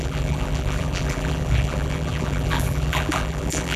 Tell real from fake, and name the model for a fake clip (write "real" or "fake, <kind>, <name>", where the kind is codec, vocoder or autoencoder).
fake, vocoder, BigVGAN v2